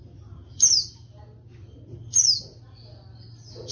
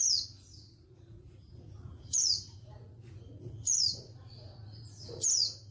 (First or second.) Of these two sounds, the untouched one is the first